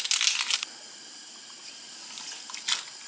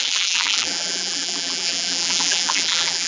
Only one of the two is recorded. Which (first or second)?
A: first